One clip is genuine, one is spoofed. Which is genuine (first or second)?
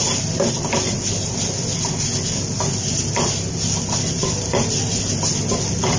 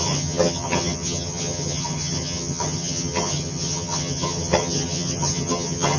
first